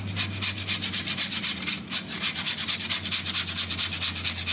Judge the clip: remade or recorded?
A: recorded